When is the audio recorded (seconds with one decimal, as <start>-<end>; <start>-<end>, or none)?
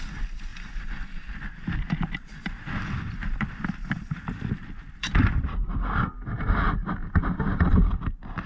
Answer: 0.0-0.5; 4.2-5.0; 6.4-8.5